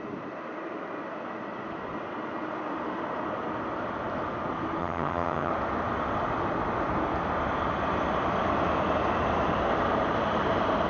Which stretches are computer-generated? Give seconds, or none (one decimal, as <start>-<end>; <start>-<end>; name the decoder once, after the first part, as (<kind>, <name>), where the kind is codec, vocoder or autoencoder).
4.8-5.5 (vocoder, HiFi-GAN)